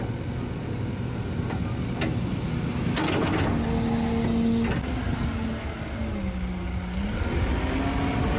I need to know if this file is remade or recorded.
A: recorded